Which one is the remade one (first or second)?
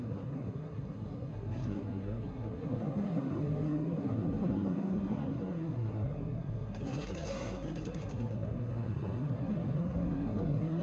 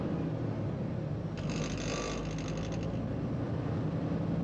first